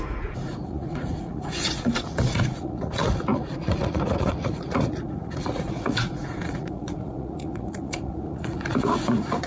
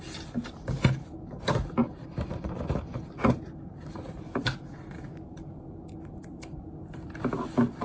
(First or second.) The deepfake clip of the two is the first